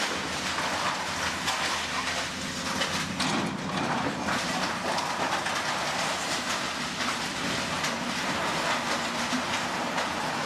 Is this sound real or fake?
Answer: real